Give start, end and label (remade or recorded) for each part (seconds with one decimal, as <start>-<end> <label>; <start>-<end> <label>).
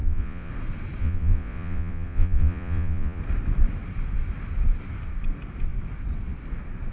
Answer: 0.0-0.5 remade; 0.5-1.0 recorded; 1.0-3.2 remade; 3.2-6.9 recorded